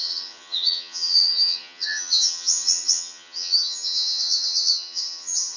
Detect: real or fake fake